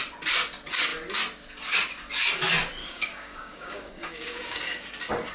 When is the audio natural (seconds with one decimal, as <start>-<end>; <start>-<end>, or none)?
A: 0.0-2.8; 4.6-5.3

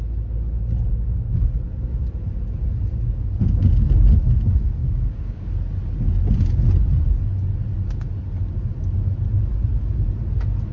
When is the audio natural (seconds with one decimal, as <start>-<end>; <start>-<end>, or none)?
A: 0.0-4.8; 5.5-10.7

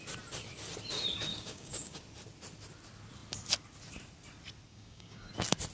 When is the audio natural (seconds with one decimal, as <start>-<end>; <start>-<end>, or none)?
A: 0.0-1.3; 2.0-4.7; 5.3-5.7

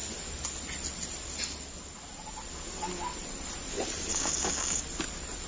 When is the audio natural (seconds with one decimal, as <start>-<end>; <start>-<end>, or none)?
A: 0.0-4.1; 4.8-5.5